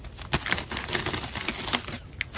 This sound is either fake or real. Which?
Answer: real